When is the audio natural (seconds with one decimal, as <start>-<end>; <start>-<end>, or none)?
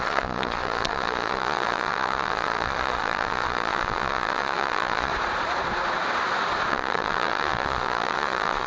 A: 5.1-6.7